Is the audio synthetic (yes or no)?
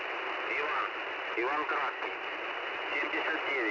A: no